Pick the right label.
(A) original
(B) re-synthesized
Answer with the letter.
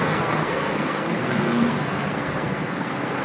B